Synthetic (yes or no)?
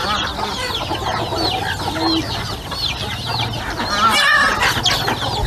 no